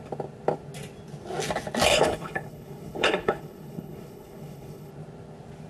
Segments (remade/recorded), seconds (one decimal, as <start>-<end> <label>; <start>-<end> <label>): 0.0-1.9 recorded; 1.9-4.9 remade; 4.9-5.7 recorded